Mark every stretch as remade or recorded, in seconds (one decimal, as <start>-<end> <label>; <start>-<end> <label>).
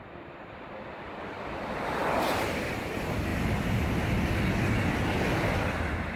0.0-6.2 recorded